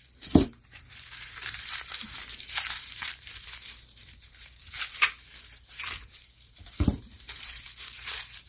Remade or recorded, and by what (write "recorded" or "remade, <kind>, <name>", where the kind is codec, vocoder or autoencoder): remade, vocoder, BigVGAN v2